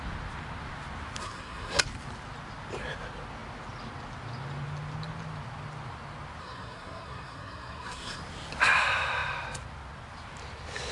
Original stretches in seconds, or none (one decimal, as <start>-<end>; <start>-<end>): 0.0-1.2; 1.8-6.4; 8.2-10.9